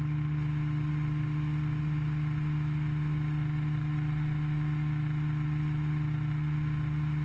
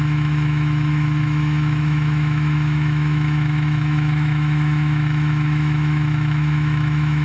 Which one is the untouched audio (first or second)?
first